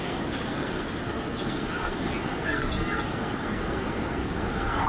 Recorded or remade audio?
remade